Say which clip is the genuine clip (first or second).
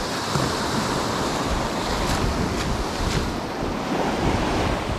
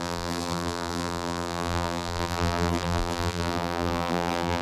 first